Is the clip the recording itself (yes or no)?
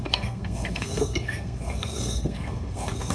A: no